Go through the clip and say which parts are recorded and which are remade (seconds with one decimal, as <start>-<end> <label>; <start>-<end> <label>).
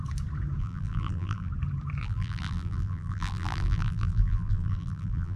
0.0-0.6 recorded; 0.6-1.5 remade; 1.5-2.0 recorded; 2.0-5.4 remade